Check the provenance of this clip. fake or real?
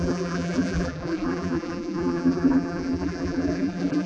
fake